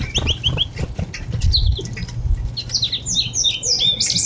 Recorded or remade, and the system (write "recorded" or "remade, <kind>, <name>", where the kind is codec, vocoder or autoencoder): recorded